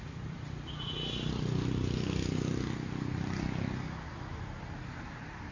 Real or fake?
real